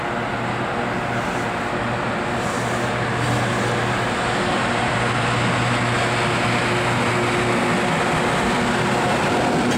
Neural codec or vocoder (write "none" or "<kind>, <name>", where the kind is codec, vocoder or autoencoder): none